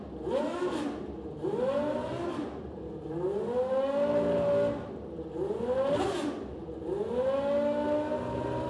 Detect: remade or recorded recorded